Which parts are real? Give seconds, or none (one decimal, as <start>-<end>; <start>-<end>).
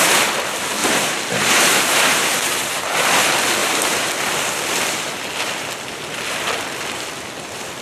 0.0-0.8; 2.8-3.6; 4.1-7.8